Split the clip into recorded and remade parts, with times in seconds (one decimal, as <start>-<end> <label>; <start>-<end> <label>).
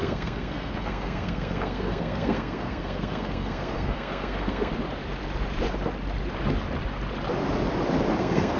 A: 0.0-4.7 remade; 4.7-8.2 recorded; 8.2-8.6 remade